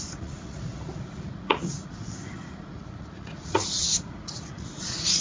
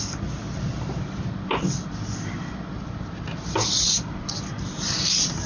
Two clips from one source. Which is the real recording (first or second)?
second